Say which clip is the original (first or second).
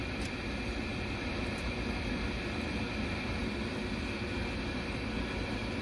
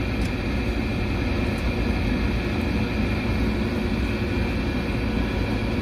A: second